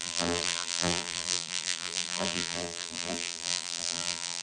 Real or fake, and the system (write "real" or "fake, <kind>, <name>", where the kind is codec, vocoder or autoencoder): fake, vocoder, BigVGAN v2